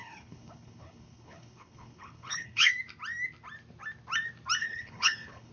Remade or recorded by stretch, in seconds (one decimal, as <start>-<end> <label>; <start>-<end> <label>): 0.0-2.7 remade; 2.7-4.6 recorded; 4.6-5.5 remade